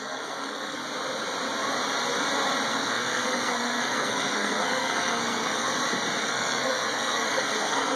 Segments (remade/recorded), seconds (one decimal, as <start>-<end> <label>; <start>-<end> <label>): 0.0-0.8 remade; 0.8-2.7 recorded; 2.7-5.7 remade; 5.7-6.2 recorded; 6.2-8.0 remade